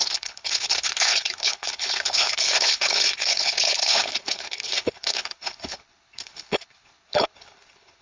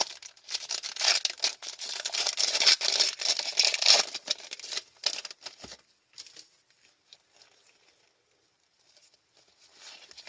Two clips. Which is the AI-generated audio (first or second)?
first